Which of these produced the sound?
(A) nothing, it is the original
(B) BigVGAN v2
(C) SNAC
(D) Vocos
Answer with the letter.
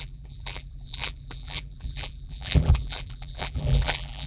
B